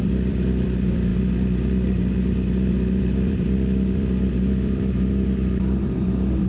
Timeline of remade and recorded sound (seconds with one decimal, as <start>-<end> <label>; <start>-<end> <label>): 0.0-1.1 remade; 1.1-3.0 recorded; 3.0-6.5 remade